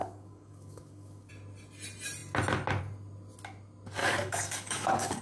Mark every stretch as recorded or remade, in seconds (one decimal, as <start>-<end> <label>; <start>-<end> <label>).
0.0-1.3 remade; 1.3-4.0 recorded; 4.0-5.2 remade